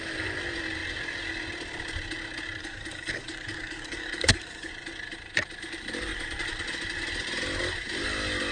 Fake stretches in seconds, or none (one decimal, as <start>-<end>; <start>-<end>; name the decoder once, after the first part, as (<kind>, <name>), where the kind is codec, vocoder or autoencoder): 2.6-4.7 (codec, DAC)